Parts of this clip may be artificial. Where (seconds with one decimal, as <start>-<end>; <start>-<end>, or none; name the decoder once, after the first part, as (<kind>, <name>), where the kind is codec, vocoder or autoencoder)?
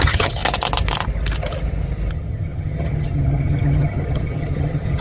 0.0-0.4 (vocoder, HiFi-GAN); 2.1-5.0